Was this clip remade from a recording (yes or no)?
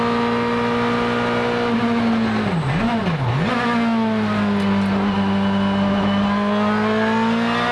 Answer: no